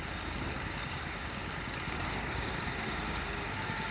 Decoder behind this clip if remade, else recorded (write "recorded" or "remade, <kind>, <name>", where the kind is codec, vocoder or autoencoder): remade, codec, DAC